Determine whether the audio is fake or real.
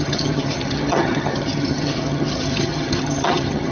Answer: fake